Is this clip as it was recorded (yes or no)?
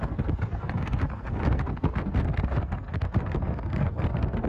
no